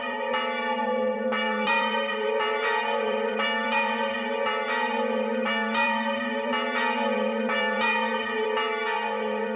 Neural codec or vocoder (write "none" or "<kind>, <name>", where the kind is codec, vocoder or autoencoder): vocoder, BigVGAN v2